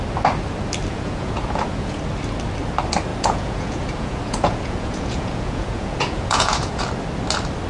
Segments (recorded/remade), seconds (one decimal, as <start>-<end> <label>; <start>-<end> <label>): 0.0-0.9 recorded; 0.9-2.0 remade; 2.0-3.1 recorded; 3.1-6.8 remade; 6.8-7.7 recorded